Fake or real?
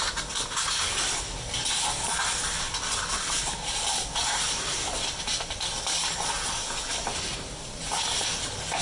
real